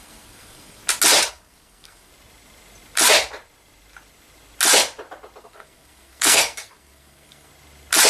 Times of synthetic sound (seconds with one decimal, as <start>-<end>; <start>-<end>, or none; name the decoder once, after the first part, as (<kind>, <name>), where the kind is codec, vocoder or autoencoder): 0.0-0.8 (codec, SNAC); 1.3-2.1; 5.4-7.5